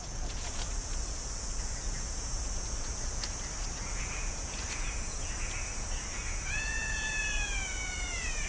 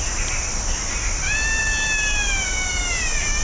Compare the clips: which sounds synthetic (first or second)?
first